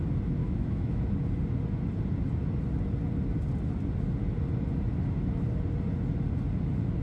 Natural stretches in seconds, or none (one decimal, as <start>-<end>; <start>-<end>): 0.0-0.4; 1.0-7.0